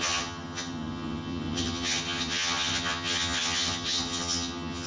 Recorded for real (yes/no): no